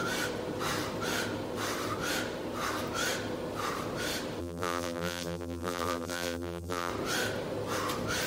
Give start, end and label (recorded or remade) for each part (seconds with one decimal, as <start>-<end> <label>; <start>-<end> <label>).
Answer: 0.0-4.4 recorded; 4.4-6.9 remade; 6.9-8.3 recorded